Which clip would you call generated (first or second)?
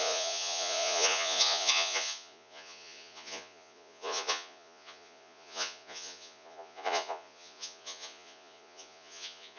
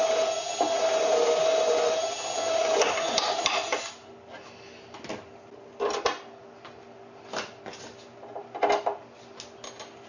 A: first